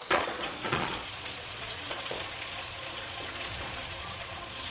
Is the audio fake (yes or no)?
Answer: yes